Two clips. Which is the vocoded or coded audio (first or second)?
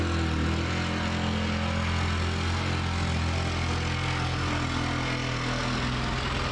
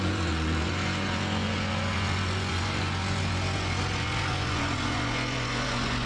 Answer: second